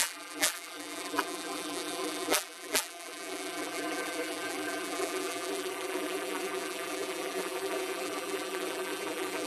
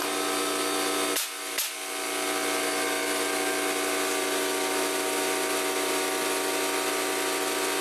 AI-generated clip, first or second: first